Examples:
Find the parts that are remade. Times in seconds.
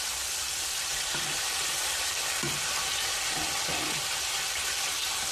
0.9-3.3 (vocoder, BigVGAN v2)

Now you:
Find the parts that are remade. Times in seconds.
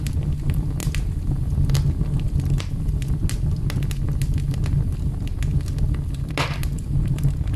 none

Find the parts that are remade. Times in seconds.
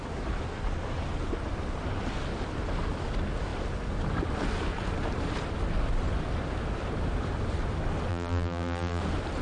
8.1-9.0 (vocoder, BigVGAN v2)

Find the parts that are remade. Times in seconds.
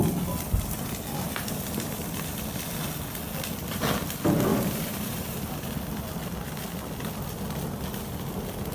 4.5-5.7 (vocoder, BigVGAN v2)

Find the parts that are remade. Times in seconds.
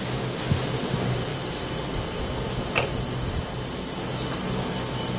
none